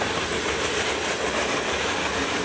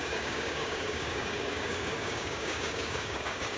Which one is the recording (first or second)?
first